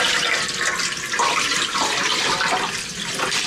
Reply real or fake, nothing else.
real